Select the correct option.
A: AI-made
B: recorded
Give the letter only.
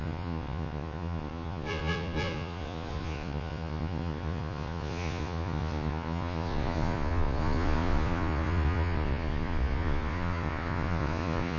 A